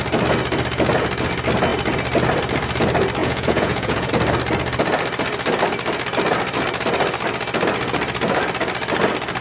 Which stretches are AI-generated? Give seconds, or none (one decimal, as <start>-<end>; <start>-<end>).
3.2-4.1